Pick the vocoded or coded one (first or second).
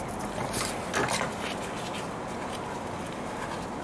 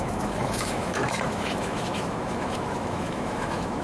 second